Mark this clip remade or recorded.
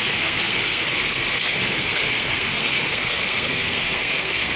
remade